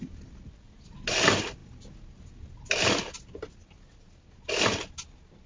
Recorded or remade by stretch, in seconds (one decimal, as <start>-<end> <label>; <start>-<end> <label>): 0.0-5.5 recorded